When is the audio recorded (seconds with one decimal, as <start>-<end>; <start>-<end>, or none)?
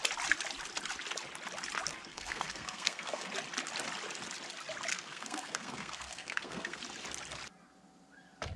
0.0-1.9; 3.3-4.9; 6.8-8.6